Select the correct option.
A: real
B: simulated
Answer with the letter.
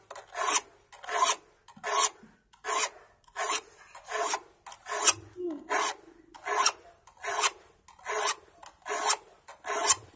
A